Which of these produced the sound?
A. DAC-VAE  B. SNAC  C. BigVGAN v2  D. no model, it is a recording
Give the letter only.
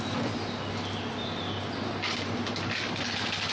D